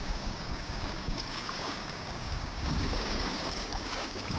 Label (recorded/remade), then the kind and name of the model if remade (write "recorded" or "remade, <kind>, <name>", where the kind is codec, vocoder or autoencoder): remade, codec, DAC